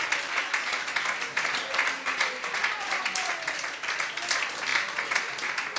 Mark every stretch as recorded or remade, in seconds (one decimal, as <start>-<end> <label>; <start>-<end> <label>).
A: 0.0-5.8 recorded